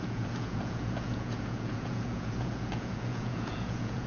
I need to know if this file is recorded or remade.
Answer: remade